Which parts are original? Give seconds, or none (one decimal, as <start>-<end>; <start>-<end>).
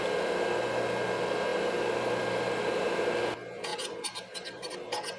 0.0-1.5; 2.7-3.7; 4.7-5.2